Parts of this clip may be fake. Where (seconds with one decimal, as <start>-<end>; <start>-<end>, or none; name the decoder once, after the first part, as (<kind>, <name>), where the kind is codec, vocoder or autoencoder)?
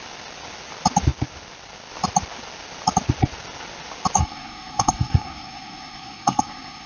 4.2-6.9 (codec, SNAC)